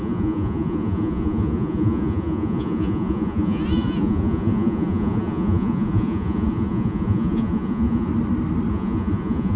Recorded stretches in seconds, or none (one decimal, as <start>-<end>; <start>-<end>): 8.1-8.7